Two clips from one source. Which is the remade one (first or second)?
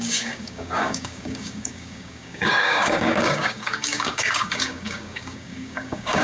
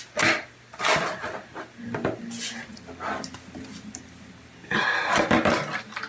first